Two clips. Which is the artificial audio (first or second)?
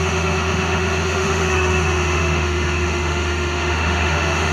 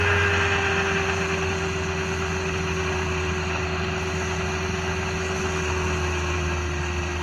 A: first